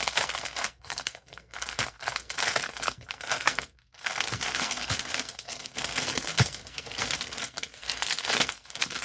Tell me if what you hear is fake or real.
fake